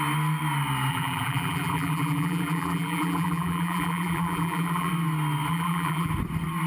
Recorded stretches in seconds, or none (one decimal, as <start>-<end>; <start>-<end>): 0.0-0.9; 4.9-5.5; 6.1-6.7